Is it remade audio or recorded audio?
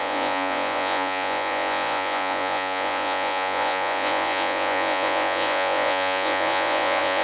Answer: remade